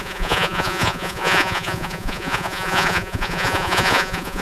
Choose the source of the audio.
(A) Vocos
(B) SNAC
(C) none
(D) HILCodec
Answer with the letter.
A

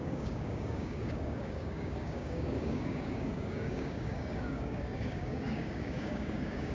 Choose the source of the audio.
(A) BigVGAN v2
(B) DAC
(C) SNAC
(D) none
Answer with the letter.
B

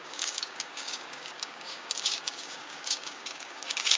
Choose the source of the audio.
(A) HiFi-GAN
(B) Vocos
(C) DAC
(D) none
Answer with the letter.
C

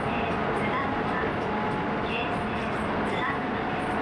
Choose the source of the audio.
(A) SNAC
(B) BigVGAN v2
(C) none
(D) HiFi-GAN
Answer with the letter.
C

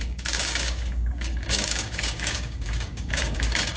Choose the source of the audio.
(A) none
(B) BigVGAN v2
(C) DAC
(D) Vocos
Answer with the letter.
C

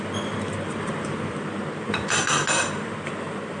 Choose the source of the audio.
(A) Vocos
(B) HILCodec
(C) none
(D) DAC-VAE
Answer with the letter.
C